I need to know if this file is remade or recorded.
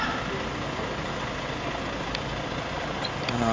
recorded